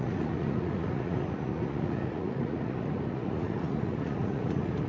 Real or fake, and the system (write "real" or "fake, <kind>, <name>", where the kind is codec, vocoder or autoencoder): fake, vocoder, Vocos